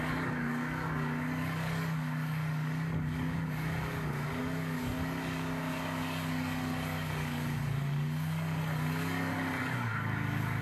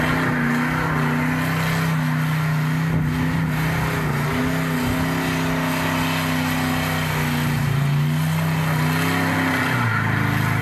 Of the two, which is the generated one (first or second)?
first